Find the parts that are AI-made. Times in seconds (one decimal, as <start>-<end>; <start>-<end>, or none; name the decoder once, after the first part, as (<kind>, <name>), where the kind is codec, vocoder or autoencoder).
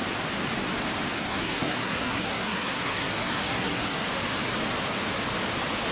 1.2-4.0 (codec, SNAC)